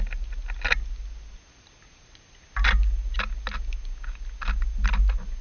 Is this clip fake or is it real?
real